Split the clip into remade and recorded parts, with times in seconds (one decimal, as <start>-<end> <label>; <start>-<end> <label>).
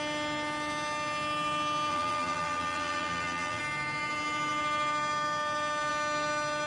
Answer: 0.0-1.9 recorded; 1.9-3.6 remade; 3.6-6.7 recorded